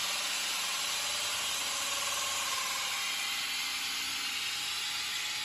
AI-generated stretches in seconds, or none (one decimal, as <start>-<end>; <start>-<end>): none